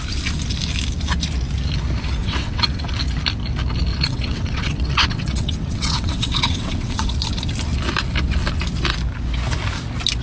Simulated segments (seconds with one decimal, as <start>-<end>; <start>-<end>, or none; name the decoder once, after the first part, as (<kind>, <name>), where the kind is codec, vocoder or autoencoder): 2.2-2.8 (vocoder, WaveNeXt); 3.9-7.1